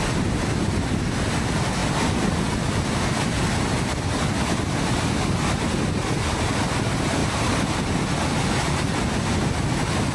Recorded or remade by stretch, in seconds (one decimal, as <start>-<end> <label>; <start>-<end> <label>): 0.0-7.2 recorded; 7.2-7.8 remade; 7.8-10.1 recorded